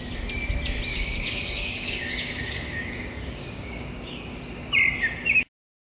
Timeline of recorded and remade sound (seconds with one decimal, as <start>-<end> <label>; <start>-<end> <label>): 0.0-0.9 recorded; 0.9-4.4 remade; 4.4-5.8 recorded

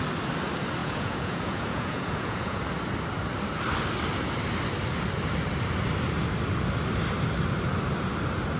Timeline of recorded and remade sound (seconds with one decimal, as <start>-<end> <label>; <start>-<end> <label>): 0.0-0.8 recorded; 0.8-2.6 remade; 2.6-8.6 recorded

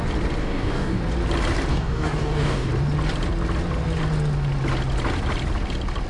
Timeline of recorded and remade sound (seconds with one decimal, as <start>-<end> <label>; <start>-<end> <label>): 0.0-0.4 recorded; 0.4-1.0 remade; 1.0-1.7 recorded; 1.7-2.7 remade; 2.7-6.1 recorded